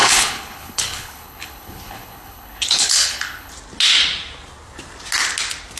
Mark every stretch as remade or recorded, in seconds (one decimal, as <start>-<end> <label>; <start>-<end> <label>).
0.0-3.5 remade; 3.5-5.8 recorded